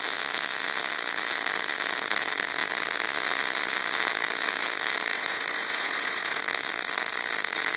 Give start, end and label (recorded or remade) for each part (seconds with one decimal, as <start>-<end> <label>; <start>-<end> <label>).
0.0-5.1 recorded; 5.1-6.4 remade; 6.4-7.8 recorded